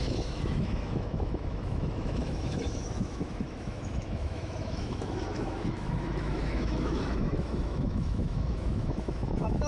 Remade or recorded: remade